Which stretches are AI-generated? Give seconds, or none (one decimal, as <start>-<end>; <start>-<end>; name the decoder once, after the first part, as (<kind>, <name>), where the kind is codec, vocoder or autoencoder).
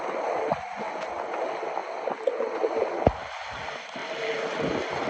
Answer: none